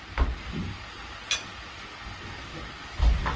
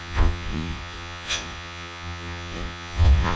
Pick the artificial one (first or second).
second